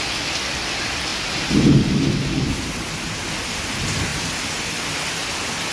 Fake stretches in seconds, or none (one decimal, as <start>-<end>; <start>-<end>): 1.1-2.7

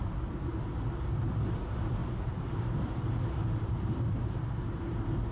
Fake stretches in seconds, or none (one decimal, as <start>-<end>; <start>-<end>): 0.0-0.6; 2.0-4.4

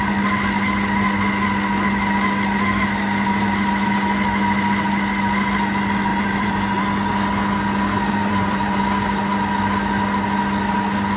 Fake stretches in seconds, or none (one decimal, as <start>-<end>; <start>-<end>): 6.1-6.8; 8.2-8.8